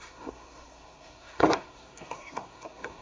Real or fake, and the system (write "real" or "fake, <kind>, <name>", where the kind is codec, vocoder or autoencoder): fake, codec, SNAC